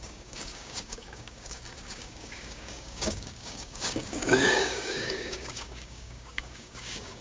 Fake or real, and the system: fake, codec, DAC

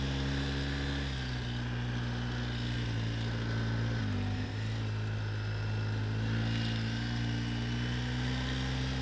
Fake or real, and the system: real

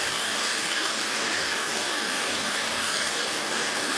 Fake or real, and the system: fake, codec, DAC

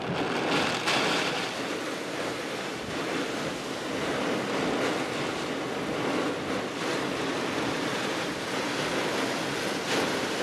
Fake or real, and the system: real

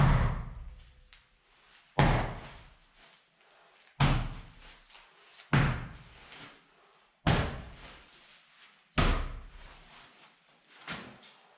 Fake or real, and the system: real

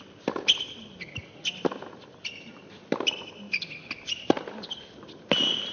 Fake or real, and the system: real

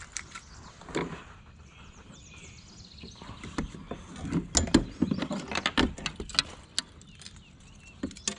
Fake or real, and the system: real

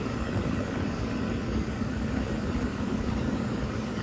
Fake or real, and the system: fake, codec, DAC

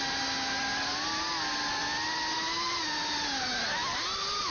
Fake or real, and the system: real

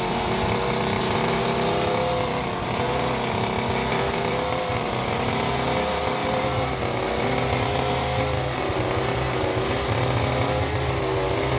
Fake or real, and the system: real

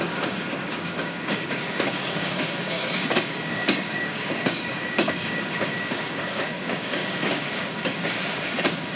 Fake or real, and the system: fake, codec, DAC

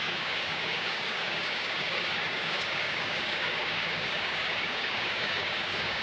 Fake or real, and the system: fake, codec, DAC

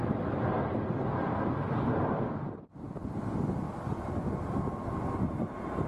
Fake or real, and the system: real